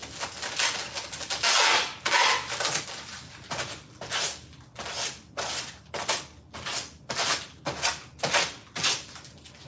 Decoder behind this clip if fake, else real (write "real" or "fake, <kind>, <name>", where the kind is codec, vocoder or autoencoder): real